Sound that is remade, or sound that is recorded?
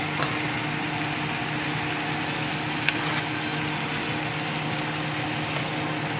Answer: recorded